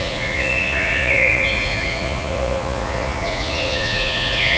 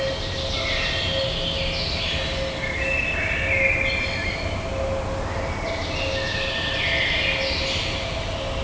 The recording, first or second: second